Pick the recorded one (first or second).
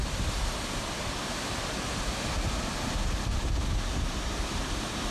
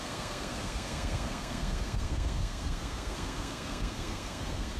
first